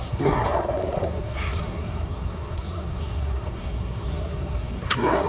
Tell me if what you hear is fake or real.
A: fake